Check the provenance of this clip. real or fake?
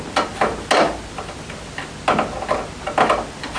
real